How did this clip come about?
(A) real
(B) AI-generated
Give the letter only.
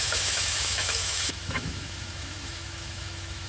B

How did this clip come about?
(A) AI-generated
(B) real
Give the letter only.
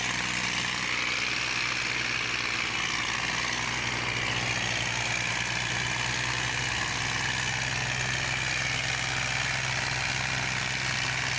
B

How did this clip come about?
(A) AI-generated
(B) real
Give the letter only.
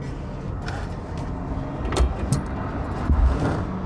B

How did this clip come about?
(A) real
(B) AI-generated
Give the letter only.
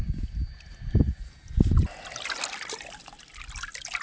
A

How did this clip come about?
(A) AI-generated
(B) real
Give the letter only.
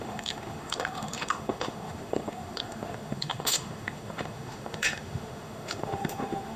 A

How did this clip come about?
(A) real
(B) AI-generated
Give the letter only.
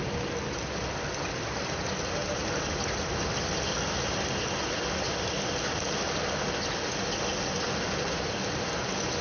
A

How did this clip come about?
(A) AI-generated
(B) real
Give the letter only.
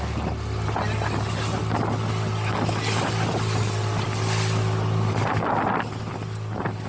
B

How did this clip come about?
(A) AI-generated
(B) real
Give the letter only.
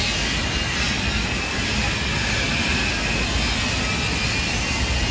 B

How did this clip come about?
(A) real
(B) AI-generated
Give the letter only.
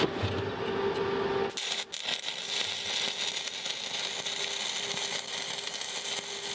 A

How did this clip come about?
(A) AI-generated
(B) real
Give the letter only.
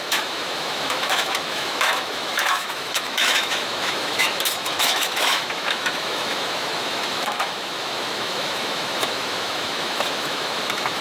A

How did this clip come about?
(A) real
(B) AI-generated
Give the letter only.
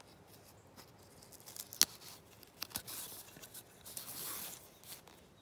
A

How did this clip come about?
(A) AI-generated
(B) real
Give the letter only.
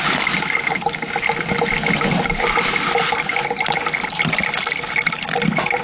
B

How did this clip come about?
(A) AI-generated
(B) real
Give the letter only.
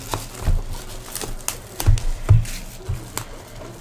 B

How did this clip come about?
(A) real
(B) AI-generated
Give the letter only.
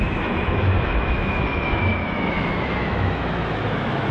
B